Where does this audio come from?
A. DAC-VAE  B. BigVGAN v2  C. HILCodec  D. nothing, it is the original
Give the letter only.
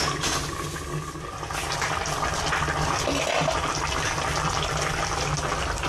D